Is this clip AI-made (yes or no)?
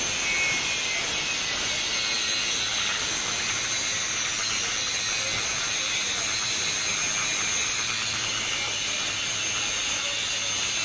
no